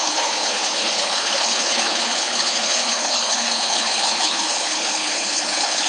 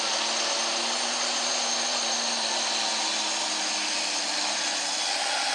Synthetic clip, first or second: first